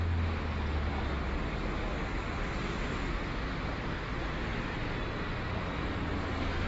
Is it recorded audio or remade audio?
recorded